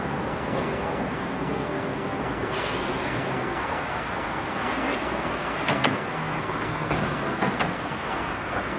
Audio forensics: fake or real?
fake